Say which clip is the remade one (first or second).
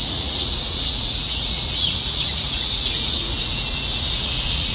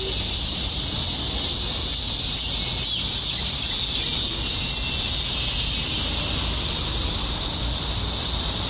first